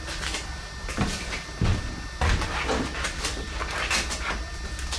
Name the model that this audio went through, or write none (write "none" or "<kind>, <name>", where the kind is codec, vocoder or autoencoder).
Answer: none